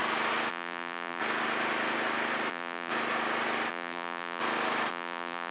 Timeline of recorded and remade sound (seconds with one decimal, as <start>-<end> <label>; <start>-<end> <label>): 0.0-0.5 recorded; 0.5-1.2 remade; 1.2-2.5 recorded; 2.5-2.9 remade; 2.9-3.7 recorded; 3.7-4.4 remade; 4.4-4.9 recorded; 4.9-5.5 remade